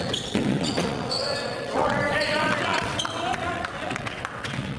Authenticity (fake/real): fake